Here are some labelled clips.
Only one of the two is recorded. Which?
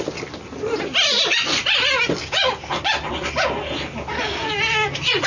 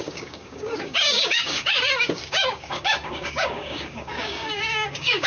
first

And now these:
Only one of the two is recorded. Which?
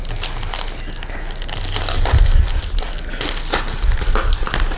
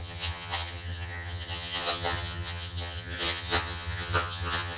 first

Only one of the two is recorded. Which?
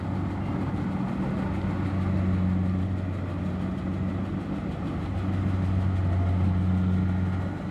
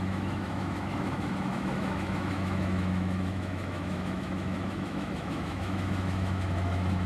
first